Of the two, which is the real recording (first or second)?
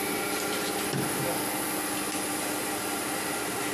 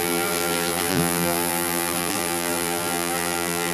first